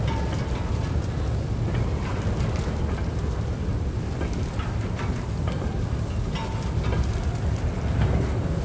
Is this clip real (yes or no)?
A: yes